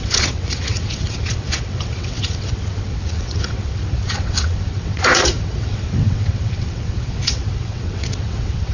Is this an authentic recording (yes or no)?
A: no